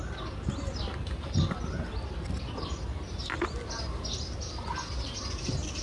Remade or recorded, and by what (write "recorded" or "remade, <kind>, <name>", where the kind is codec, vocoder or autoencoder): recorded